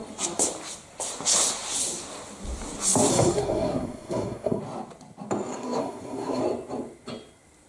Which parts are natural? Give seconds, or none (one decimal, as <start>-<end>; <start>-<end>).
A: 0.0-3.1; 4.6-5.5; 6.4-7.7